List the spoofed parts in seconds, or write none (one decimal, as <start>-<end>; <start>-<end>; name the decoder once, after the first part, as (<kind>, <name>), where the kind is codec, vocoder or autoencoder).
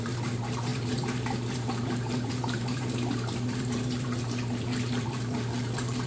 0.0-6.1 (vocoder, BigVGAN v2)